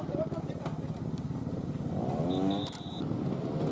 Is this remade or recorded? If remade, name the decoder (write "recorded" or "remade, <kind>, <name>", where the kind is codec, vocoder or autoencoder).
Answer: recorded